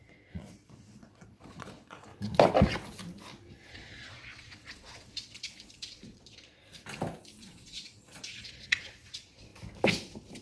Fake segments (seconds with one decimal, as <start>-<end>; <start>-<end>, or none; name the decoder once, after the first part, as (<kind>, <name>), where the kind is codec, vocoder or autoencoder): 0.0-2.1 (vocoder, Vocos); 3.7-6.6; 7.4-9.5